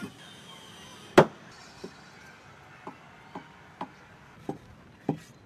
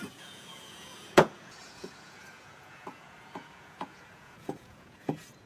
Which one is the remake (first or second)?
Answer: second